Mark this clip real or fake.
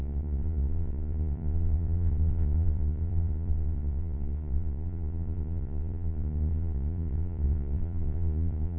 fake